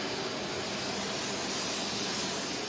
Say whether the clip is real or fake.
real